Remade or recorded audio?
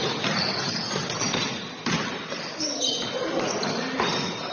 recorded